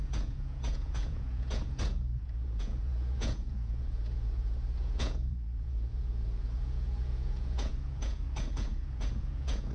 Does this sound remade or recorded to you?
remade